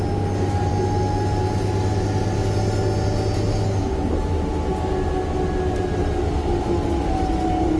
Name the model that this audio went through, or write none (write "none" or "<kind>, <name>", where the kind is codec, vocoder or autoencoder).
none